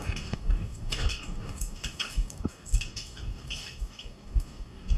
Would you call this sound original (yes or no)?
no